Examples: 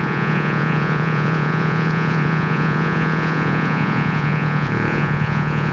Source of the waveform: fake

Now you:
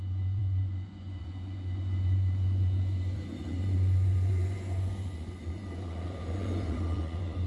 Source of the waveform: fake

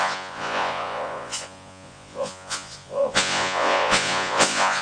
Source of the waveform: fake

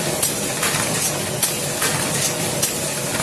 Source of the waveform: real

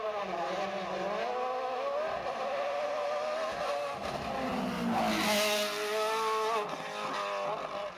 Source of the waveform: real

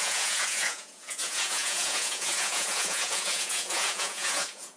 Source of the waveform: fake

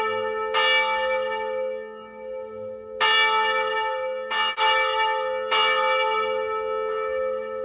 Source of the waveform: real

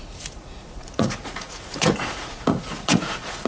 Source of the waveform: fake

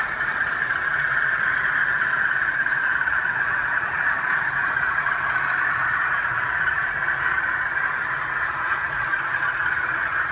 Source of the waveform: fake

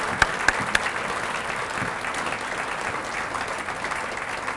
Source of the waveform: real